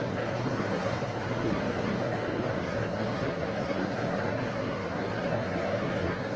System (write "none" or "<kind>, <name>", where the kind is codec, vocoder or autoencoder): codec, SNAC